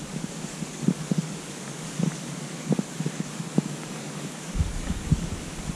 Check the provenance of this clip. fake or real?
fake